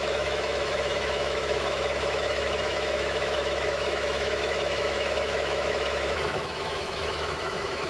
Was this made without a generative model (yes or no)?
no